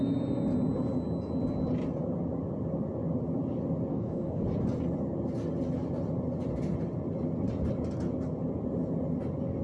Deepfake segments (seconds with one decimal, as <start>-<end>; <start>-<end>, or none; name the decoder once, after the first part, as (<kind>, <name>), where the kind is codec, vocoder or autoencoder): 3.9-4.4 (codec, DAC)